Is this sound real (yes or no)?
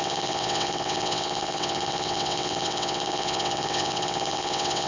no